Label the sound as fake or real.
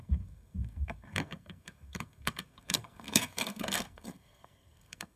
fake